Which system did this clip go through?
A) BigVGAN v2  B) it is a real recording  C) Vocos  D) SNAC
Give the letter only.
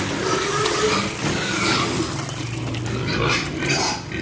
B